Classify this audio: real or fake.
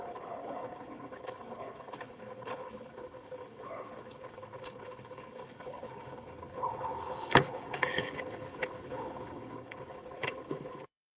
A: fake